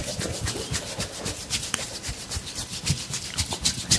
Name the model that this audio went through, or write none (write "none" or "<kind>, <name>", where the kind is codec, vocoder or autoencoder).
vocoder, BigVGAN v2